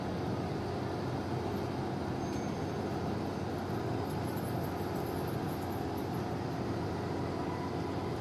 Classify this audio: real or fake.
real